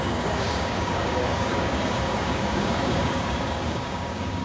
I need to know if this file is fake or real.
fake